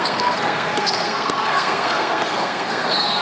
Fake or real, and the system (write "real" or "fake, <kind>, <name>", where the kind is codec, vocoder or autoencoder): fake, codec, SNAC